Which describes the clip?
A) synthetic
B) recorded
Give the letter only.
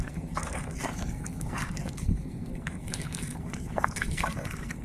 A